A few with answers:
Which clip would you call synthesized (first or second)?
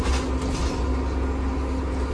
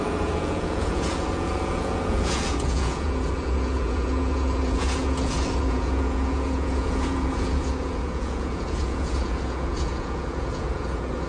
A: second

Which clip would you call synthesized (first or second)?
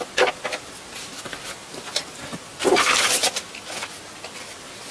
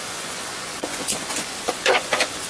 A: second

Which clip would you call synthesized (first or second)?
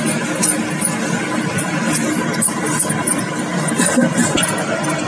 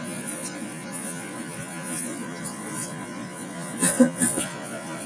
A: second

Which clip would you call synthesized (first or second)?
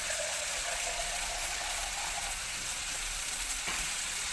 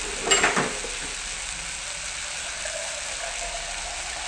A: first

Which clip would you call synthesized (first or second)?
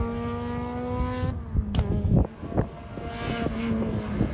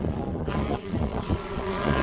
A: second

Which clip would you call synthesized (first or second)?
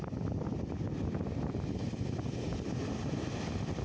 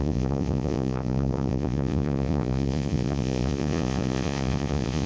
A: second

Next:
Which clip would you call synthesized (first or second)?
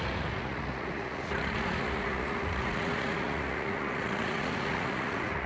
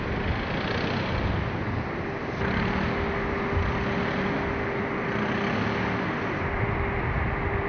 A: first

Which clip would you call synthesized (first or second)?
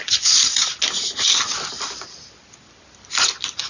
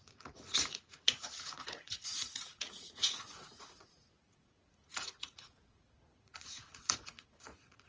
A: second